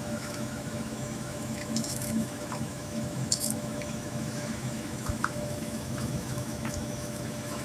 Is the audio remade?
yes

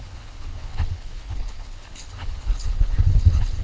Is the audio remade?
yes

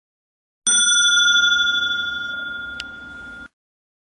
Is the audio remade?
no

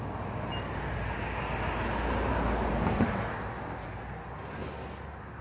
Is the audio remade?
no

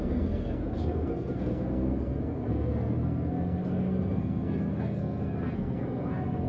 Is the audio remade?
yes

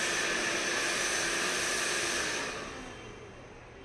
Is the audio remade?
no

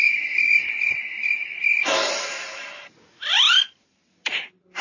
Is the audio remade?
yes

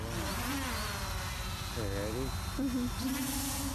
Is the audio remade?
no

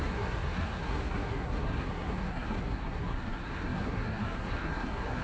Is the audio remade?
yes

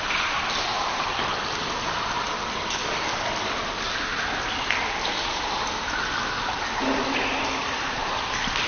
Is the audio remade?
no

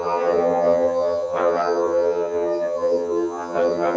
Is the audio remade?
yes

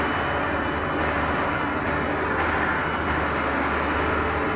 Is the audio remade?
no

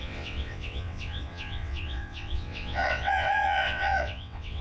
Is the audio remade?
yes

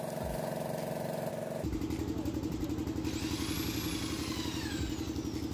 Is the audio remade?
no